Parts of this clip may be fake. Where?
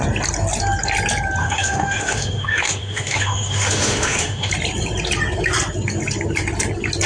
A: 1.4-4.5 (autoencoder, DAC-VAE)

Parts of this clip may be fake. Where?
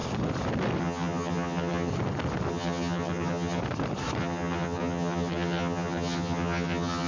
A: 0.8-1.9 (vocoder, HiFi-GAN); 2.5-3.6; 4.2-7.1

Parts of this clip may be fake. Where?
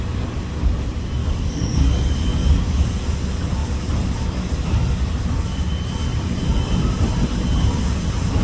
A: 1.2-2.9 (codec, DAC)